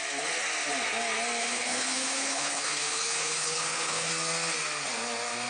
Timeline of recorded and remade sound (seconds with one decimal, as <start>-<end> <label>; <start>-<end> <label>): 0.0-1.4 recorded; 1.4-4.1 remade; 4.1-5.5 recorded